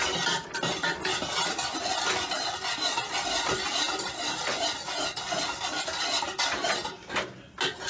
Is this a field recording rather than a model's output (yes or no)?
yes